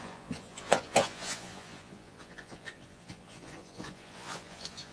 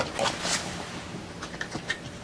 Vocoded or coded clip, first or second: first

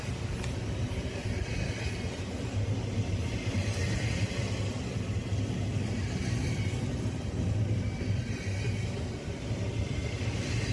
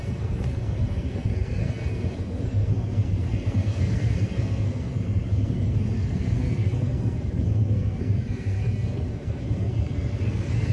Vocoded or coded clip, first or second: second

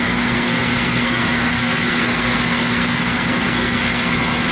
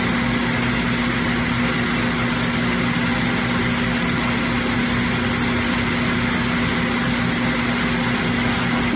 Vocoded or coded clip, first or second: first